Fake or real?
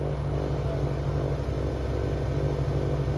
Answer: real